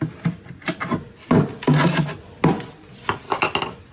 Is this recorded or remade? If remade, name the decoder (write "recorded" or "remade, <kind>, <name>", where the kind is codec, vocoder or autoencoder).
recorded